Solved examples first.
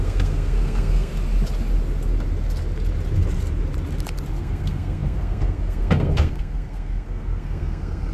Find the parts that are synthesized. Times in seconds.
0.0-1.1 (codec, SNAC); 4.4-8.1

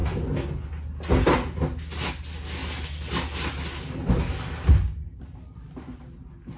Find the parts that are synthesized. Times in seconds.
none

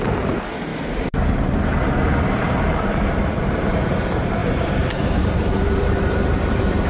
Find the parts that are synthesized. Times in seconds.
0.0-0.7 (vocoder, BigVGAN v2); 2.2-6.9

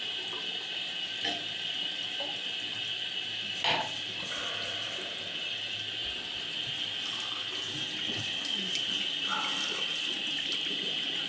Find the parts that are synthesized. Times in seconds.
none

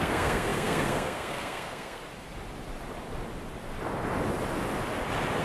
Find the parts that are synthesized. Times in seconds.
0.0-2.0 (codec, SNAC)